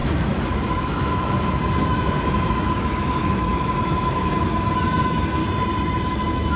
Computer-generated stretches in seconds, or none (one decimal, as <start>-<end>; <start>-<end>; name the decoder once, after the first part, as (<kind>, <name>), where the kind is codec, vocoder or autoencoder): 0.0-5.4 (autoencoder, DAC-VAE); 6.0-6.6